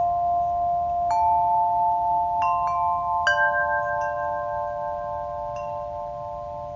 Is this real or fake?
real